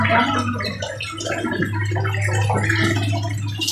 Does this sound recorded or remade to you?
recorded